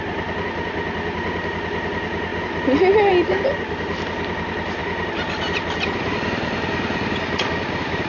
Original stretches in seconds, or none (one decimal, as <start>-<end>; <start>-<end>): 0.0-8.1